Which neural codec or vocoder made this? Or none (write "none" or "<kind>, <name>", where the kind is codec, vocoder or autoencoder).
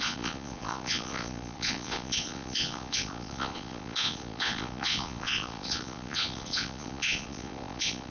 vocoder, Vocos